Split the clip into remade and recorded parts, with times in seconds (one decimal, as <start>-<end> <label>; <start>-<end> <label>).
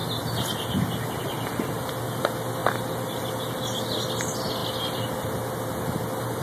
0.0-6.4 recorded